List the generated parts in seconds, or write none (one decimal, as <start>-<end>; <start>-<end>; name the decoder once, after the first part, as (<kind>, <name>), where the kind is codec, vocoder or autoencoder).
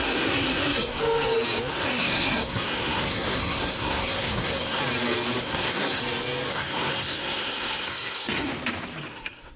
0.0-1.0 (codec, SNAC); 1.7-4.8; 5.4-6.0; 6.5-8.5; 9.1-9.6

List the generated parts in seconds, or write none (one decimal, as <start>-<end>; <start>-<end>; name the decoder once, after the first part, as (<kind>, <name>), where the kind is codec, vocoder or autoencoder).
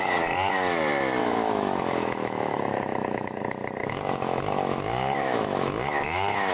1.2-3.4 (autoencoder, DAC-VAE); 3.8-6.5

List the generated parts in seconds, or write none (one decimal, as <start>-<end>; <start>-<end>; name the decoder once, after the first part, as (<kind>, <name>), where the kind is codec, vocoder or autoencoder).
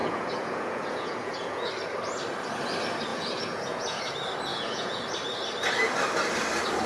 0.0-1.7 (vocoder, Vocos); 3.1-4.0; 4.5-5.0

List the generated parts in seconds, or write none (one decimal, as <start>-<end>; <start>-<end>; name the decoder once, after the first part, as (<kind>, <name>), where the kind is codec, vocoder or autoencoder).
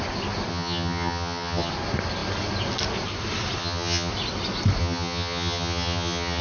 0.5-1.7 (vocoder, HiFi-GAN); 3.6-4.1; 4.8-6.4